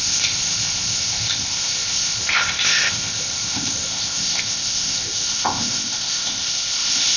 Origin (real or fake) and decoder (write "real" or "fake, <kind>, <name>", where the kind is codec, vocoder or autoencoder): fake, codec, ZipCodec